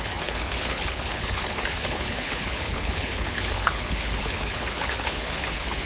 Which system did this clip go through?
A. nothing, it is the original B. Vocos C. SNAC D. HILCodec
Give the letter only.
D